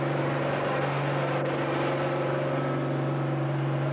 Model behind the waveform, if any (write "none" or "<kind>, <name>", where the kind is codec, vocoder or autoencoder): none